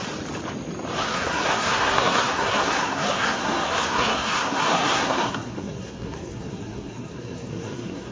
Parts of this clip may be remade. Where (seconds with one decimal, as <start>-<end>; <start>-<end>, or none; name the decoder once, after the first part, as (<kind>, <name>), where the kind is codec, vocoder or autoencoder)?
1.0-8.1 (codec, SNAC)